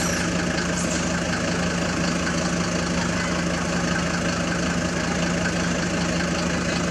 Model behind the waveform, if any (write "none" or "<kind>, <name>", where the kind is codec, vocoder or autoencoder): none